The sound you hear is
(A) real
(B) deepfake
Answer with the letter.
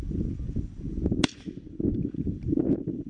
A